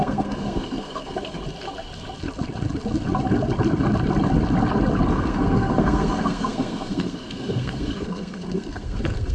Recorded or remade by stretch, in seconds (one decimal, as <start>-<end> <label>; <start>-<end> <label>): 0.0-1.4 remade; 1.4-5.1 recorded; 5.1-9.3 remade